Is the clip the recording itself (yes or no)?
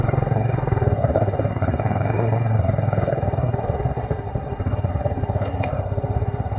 no